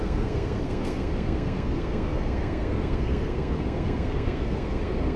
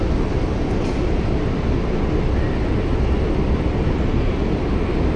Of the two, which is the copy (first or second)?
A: first